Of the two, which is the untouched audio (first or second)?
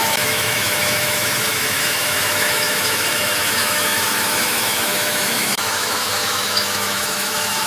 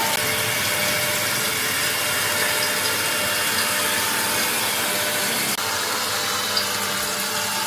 second